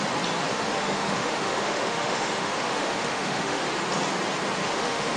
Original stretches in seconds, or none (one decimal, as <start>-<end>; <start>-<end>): 0.0-0.5; 3.6-4.6